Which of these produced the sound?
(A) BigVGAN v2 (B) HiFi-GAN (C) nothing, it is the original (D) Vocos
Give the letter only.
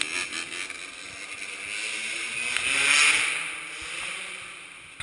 C